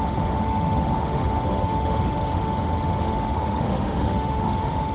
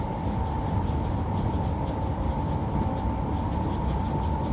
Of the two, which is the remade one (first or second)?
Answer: first